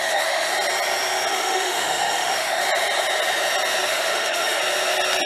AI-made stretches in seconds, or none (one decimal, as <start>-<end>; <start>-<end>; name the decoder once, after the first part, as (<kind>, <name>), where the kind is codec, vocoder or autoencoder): 0.0-0.5 (autoencoder, DAC-VAE); 1.3-2.6; 3.9-4.6